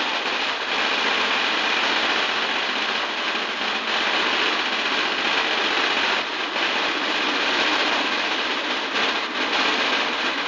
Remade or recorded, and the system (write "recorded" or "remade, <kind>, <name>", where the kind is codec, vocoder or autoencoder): recorded